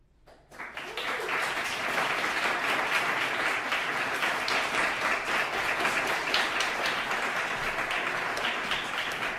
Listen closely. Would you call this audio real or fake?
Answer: real